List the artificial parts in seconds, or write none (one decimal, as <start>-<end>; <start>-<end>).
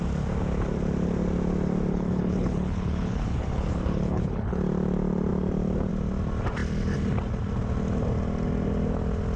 1.9-4.6